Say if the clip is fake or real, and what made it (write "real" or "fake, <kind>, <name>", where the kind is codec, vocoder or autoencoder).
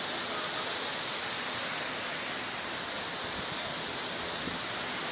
real